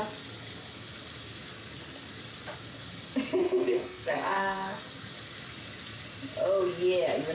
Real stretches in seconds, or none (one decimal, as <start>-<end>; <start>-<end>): 0.0-3.4; 4.8-7.3

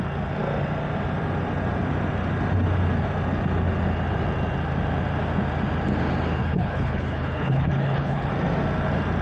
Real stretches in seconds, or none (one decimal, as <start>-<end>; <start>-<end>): 0.0-6.4; 8.3-9.2